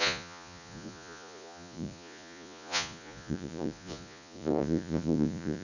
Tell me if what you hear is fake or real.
fake